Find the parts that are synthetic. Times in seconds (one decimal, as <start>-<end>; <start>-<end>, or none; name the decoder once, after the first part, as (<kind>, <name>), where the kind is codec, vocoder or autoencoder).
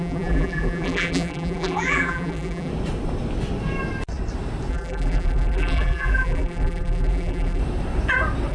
0.0-2.7 (vocoder, BigVGAN v2); 4.7-7.6